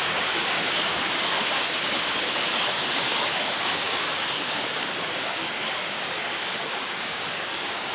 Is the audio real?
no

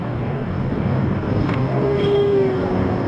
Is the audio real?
no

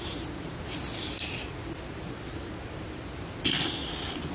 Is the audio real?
yes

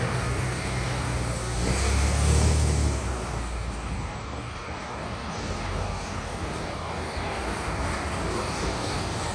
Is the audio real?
no